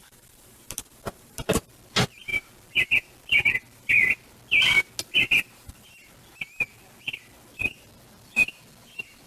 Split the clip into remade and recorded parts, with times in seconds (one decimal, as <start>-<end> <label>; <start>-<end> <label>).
0.0-1.7 remade; 1.7-9.3 recorded